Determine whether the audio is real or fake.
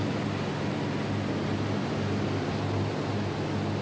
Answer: real